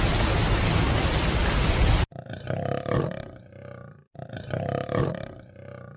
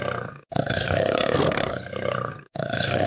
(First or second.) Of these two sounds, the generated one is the second